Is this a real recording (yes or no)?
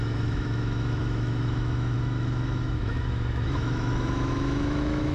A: no